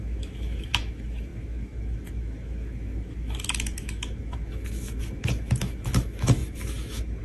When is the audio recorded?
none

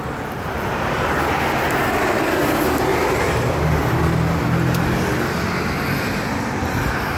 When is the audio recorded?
0.0-2.9; 4.0-7.2

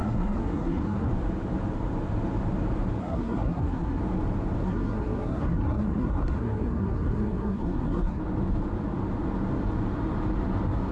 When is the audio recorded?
1.1-3.0; 4.0-4.6; 8.2-10.9

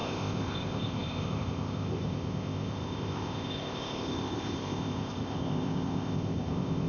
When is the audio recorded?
none

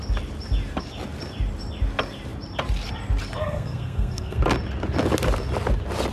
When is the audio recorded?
0.0-3.4; 4.4-6.1